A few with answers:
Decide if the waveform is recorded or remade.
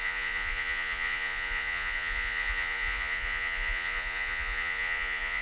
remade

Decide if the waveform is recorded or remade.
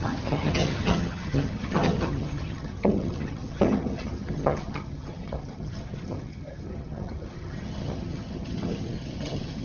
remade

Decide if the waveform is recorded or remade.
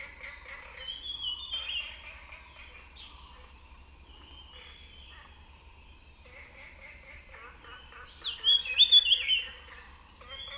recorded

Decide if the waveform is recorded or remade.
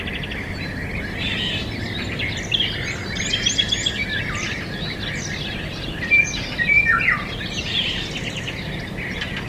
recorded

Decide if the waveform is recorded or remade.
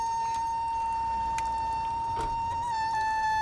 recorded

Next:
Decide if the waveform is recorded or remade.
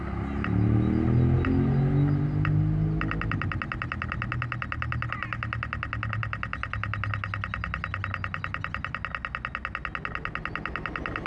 recorded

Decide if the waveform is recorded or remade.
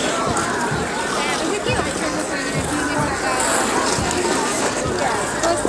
recorded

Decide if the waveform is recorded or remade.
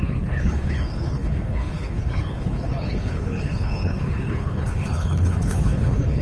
remade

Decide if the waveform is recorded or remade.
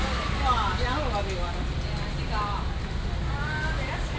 recorded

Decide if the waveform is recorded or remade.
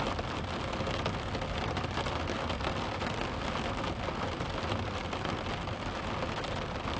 recorded